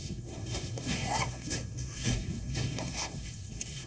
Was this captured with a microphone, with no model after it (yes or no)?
no